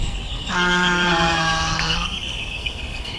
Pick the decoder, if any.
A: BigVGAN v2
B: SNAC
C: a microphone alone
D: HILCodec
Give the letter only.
B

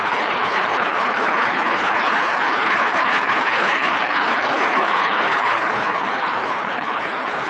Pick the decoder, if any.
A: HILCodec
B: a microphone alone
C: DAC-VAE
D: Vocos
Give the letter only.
A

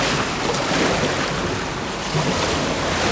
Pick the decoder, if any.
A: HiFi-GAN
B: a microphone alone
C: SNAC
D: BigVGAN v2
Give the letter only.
B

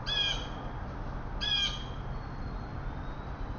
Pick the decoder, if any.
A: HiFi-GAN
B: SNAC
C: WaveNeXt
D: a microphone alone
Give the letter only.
D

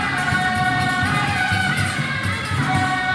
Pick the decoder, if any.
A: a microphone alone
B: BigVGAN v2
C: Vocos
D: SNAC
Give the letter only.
B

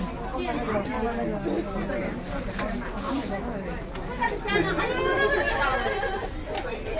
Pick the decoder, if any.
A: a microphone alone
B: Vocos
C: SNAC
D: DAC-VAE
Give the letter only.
A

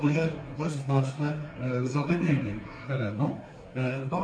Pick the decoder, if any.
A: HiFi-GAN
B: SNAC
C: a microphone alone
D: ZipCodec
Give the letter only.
B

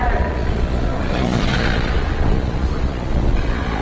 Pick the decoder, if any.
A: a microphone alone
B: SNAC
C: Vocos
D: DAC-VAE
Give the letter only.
C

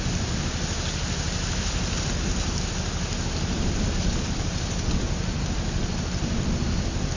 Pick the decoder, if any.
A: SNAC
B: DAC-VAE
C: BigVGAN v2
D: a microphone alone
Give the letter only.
D